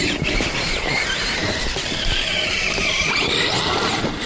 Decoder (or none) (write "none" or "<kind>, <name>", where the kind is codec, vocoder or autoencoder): vocoder, BigVGAN v2